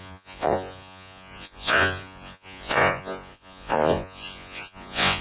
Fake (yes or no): yes